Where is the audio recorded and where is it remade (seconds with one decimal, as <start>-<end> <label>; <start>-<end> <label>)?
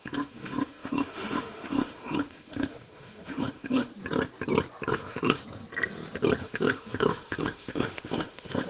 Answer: 0.0-3.9 remade; 3.9-4.9 recorded; 4.9-5.4 remade; 5.4-6.4 recorded; 6.4-8.7 remade